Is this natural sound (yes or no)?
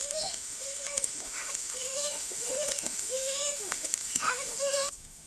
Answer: no